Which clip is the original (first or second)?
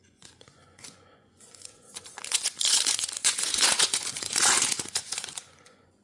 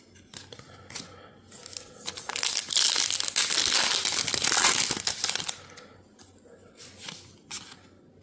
second